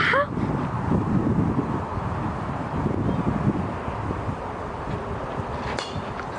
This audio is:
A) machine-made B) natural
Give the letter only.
B